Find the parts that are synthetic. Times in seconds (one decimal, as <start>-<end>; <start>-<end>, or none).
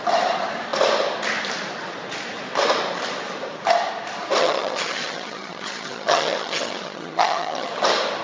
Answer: 4.4-7.7